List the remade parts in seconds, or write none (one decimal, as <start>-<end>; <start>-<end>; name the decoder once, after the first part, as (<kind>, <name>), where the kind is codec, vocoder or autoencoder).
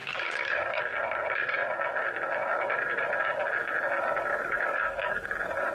0.0-0.8 (codec, DAC); 4.3-5.7